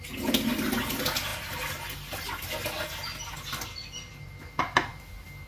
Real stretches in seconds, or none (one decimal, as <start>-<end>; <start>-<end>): 0.0-5.5